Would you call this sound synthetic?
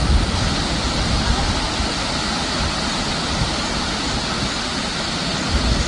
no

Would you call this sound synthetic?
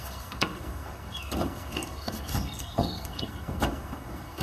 yes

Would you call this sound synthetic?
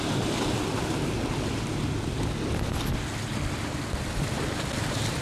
no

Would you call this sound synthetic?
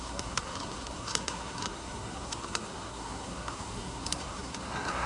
yes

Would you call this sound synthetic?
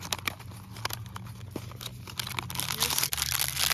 no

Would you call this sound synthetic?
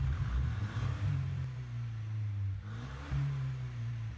yes